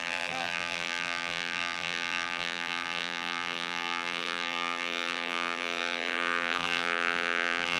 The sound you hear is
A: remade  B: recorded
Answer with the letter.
A